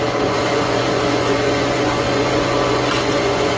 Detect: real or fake fake